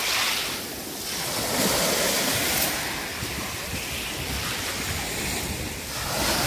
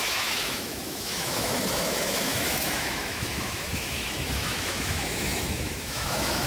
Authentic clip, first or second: first